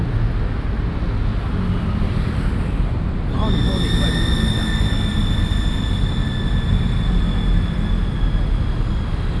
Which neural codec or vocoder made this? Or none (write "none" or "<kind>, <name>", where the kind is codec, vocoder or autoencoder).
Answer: none